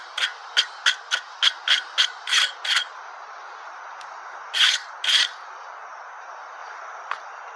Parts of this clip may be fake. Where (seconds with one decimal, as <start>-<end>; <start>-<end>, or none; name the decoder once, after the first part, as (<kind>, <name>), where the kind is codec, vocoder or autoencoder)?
6.6-7.1 (vocoder, BigVGAN v2)